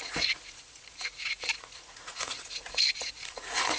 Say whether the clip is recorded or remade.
remade